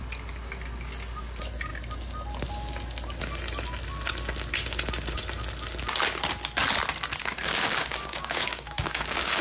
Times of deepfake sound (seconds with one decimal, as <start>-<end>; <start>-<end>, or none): 7.2-9.4